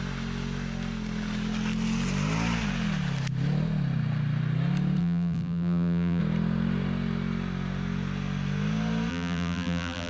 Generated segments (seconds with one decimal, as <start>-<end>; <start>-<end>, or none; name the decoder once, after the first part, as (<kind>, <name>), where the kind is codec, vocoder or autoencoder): 5.0-6.2 (vocoder, BigVGAN v2); 9.1-10.1